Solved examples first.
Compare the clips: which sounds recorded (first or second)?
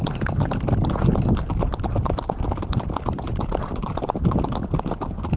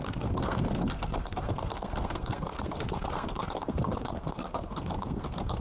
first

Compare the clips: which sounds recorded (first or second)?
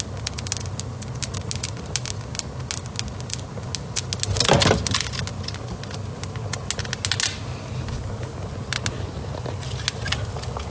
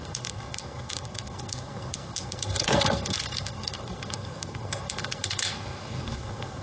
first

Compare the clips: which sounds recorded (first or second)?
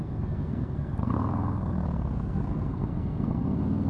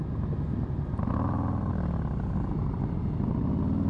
second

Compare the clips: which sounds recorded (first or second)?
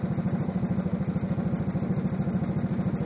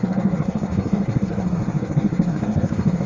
first